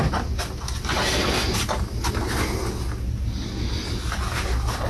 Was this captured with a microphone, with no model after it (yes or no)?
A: yes